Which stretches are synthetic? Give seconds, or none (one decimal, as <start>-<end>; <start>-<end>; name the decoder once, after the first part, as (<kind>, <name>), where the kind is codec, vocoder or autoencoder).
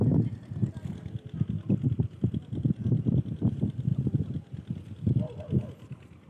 none